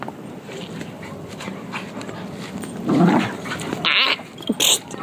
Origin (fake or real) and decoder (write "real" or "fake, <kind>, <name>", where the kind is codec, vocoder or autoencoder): real